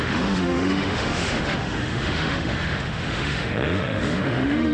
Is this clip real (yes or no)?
no